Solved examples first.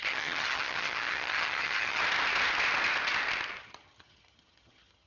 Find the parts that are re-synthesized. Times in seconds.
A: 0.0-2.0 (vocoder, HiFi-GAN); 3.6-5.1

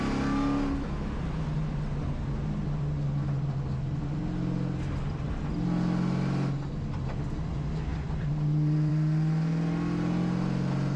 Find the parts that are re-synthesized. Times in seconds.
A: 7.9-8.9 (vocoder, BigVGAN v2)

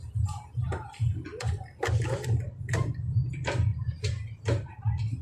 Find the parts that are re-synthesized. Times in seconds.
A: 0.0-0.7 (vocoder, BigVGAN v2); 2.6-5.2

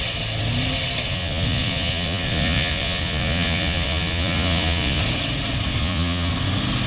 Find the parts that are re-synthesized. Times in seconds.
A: 1.1-5.0 (vocoder, Vocos); 5.8-6.3

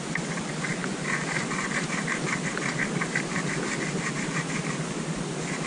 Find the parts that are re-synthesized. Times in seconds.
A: 0.0-5.7 (vocoder, BigVGAN v2)